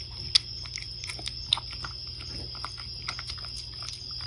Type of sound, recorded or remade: recorded